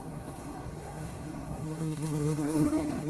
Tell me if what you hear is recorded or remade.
remade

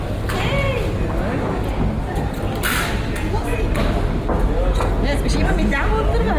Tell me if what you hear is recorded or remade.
recorded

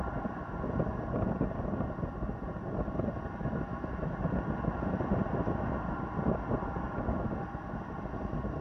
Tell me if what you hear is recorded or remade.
recorded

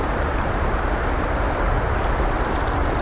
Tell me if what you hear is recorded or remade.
recorded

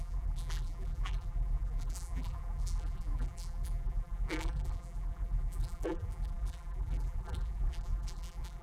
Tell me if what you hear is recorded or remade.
remade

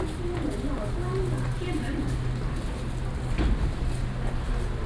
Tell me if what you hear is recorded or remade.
recorded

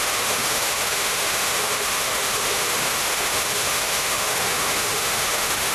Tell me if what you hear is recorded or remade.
remade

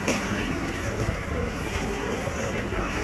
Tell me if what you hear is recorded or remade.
remade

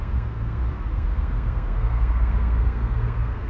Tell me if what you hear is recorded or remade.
remade